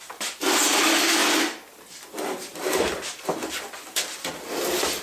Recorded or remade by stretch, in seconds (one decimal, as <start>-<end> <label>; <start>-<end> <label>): 0.0-2.5 recorded; 2.5-4.6 remade; 4.6-5.0 recorded